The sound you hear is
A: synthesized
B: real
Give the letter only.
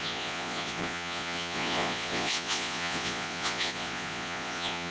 A